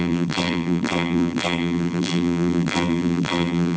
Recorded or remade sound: remade